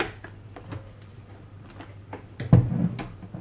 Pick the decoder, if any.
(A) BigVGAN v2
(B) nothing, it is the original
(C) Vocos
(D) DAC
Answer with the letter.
B